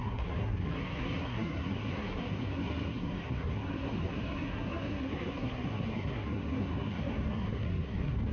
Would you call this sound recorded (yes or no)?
no